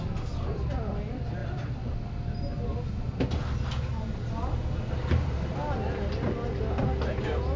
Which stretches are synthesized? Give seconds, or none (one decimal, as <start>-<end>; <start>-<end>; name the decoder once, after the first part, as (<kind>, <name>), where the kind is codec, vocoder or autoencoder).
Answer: none